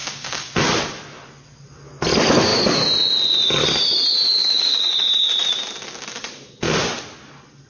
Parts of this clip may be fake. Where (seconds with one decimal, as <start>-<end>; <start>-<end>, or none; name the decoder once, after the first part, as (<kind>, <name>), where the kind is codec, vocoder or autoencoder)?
0.0-0.6 (codec, DAC); 4.4-5.1